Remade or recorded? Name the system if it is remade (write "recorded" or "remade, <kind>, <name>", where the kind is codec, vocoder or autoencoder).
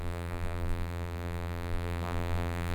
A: remade, vocoder, BigVGAN v2